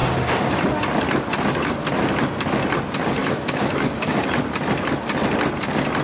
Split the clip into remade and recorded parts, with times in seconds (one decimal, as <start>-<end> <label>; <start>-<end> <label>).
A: 0.0-3.2 recorded; 3.2-4.2 remade; 4.2-6.0 recorded